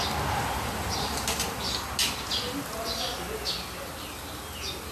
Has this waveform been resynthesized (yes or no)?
no